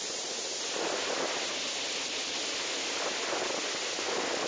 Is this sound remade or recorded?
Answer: recorded